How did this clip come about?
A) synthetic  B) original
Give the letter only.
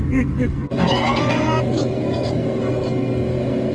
A